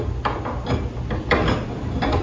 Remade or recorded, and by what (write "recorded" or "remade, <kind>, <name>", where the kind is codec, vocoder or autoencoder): recorded